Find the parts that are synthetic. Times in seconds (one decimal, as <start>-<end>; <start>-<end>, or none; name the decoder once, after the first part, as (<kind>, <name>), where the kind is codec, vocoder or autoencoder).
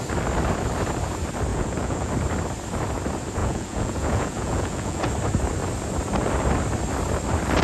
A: 1.5-2.1 (vocoder, Vocos); 3.4-5.1